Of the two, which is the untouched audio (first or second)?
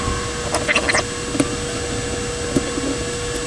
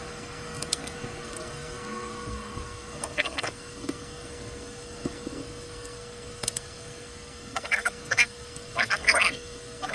first